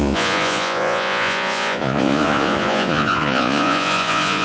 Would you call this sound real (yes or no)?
no